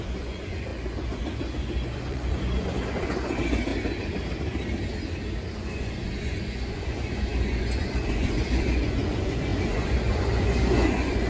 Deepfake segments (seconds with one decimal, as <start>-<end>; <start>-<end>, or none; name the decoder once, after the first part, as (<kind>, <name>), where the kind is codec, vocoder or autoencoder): 0.0-3.7 (vocoder, Vocos); 5.5-11.3